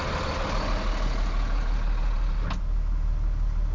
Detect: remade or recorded recorded